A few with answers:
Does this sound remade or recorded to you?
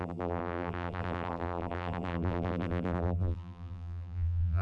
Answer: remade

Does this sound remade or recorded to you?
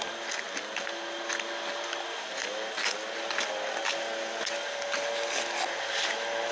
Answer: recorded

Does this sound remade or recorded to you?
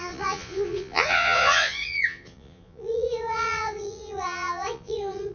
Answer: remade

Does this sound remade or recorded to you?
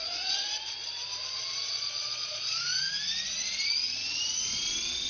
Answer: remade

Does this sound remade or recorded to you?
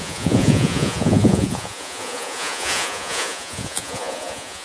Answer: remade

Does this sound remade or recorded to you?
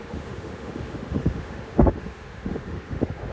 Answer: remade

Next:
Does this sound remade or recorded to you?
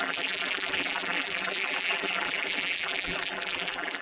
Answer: remade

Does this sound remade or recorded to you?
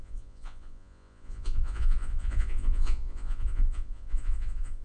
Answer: remade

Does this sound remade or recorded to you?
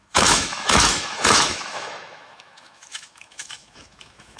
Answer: remade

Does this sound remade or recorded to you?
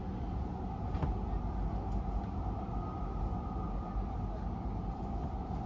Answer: recorded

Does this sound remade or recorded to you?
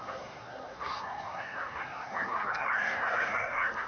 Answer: remade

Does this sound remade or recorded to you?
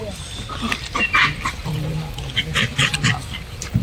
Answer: recorded